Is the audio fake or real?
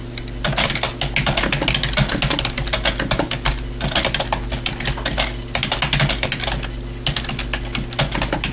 real